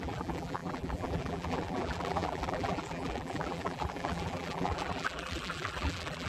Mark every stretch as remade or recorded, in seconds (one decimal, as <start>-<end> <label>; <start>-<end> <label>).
0.0-6.3 remade